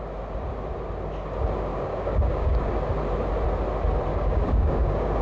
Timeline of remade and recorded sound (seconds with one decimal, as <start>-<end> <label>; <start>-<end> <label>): 0.0-1.7 recorded; 1.7-2.7 remade; 2.7-4.1 recorded; 4.1-5.2 remade